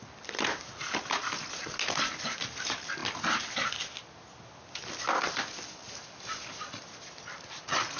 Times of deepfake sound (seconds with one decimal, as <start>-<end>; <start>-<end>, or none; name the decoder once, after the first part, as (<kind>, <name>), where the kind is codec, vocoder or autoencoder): none